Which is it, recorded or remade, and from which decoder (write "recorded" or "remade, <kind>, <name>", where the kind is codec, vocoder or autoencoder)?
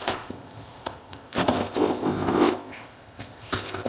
remade, codec, ZipCodec